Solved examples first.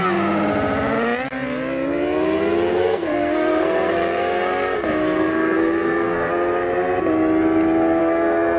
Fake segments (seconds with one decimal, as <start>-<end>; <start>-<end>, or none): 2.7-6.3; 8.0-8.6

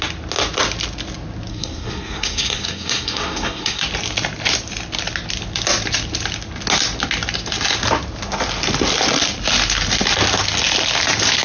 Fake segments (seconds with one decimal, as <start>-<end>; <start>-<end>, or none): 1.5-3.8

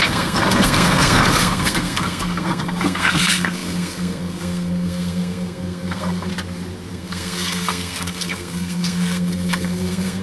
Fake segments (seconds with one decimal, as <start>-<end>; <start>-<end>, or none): 0.0-6.3; 6.9-10.2

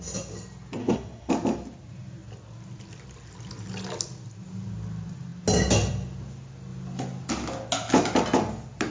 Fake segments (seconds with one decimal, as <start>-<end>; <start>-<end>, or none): 0.8-1.3

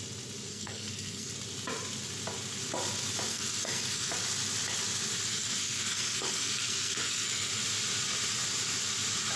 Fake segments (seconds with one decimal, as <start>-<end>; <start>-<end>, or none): 0.5-1.3; 3.3-4.1; 5.3-7.5